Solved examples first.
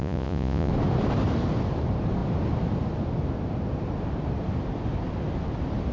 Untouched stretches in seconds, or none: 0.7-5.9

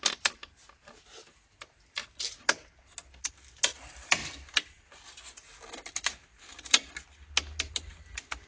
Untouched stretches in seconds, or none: 0.0-8.5

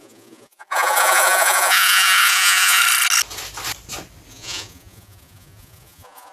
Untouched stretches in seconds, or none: 2.8-4.3

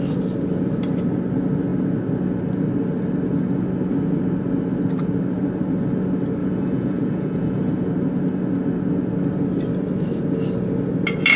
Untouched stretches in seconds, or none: 0.0-6.4; 7.7-11.4

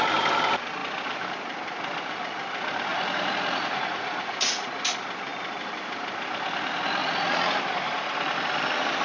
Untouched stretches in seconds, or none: 0.0-2.9; 4.8-7.0; 7.5-9.0

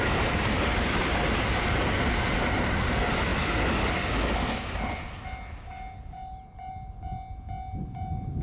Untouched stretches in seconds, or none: 0.0-8.4

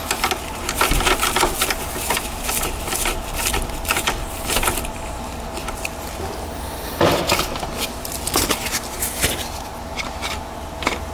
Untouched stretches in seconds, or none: 0.0-11.1

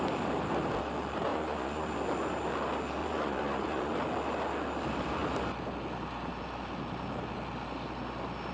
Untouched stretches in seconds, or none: 0.0-1.3; 1.9-3.0; 3.9-8.5